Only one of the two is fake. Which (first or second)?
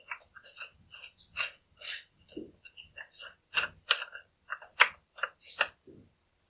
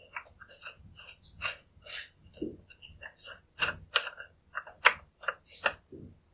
first